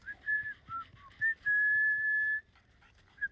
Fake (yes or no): no